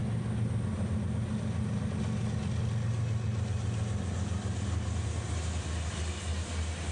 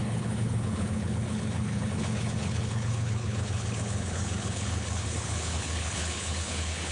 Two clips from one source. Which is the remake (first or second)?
second